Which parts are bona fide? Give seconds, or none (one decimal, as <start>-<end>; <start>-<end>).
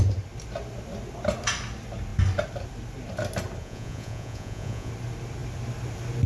0.0-3.6; 4.9-6.3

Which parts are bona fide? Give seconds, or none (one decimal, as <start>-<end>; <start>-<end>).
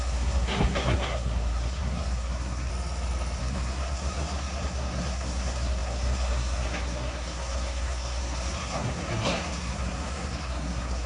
2.7-3.4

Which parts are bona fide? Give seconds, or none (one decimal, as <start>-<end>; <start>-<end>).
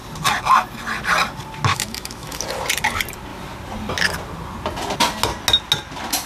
0.0-1.7; 2.4-6.3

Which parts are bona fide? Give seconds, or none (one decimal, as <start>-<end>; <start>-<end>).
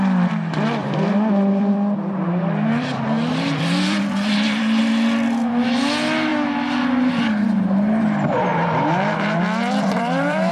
0.0-0.8; 4.8-8.5